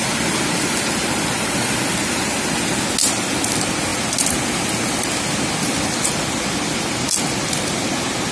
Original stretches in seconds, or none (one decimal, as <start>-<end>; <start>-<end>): 0.0-8.3